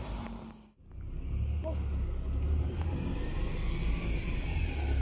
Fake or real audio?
real